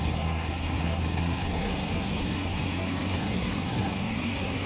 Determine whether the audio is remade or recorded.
remade